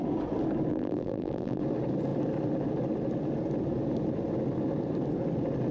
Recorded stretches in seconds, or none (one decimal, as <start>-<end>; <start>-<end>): 0.0-0.7; 1.6-5.7